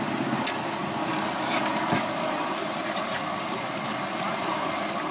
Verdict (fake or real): real